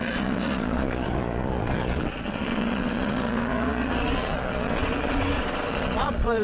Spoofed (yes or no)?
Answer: yes